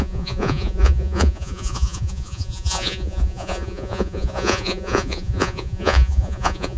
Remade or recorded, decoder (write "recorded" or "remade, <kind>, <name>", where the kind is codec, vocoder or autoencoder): remade, vocoder, Vocos